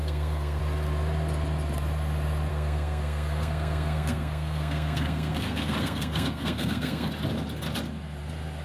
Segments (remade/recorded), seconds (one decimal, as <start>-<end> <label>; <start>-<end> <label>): 0.0-0.6 remade; 0.6-2.5 recorded; 2.5-7.1 remade; 7.1-8.6 recorded